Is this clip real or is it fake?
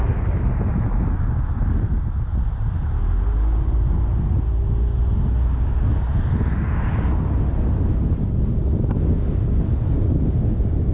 real